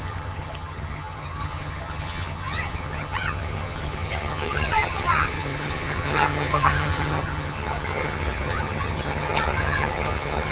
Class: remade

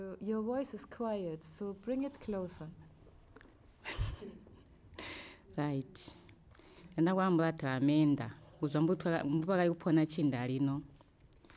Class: recorded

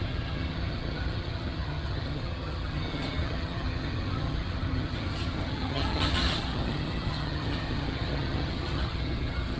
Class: remade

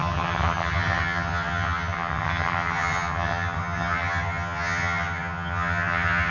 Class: remade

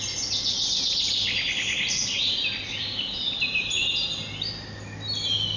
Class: recorded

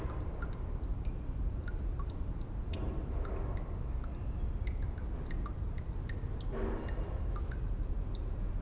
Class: recorded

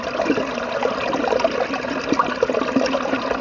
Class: recorded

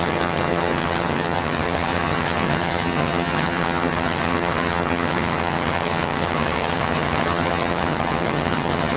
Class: remade